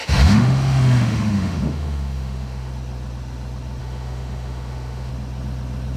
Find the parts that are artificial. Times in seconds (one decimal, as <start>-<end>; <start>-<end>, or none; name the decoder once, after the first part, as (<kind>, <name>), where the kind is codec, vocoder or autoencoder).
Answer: 0.0-2.7 (autoencoder, DAC-VAE); 3.8-5.1

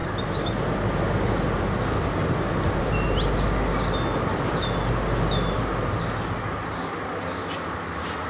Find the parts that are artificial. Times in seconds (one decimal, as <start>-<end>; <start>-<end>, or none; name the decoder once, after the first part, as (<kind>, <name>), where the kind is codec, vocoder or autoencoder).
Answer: 2.8-8.3 (vocoder, BigVGAN v2)